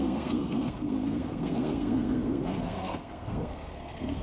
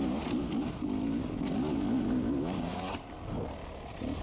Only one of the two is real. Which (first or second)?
second